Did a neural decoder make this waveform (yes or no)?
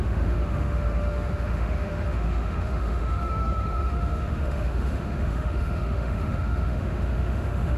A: yes